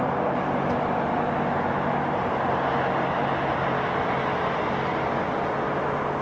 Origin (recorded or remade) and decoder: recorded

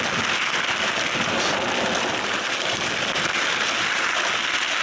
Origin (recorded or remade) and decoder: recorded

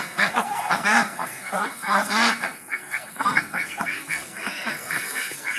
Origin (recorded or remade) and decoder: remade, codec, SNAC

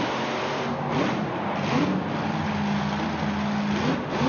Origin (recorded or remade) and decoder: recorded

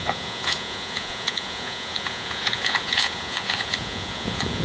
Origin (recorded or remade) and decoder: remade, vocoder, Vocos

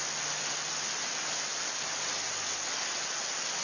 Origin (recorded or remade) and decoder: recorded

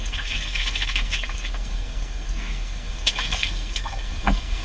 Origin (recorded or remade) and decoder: remade, codec, SNAC